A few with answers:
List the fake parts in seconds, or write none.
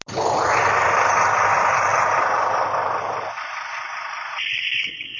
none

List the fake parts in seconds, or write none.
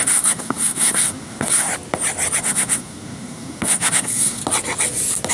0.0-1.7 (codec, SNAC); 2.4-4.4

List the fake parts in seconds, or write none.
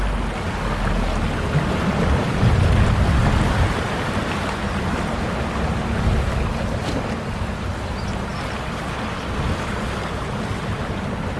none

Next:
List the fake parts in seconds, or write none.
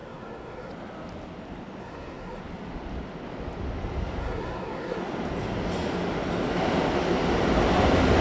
0.0-0.7 (codec, SNAC); 1.8-2.4; 4.2-5.0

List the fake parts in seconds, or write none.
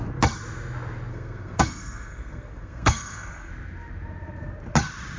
1.1-3.5 (codec, SNAC)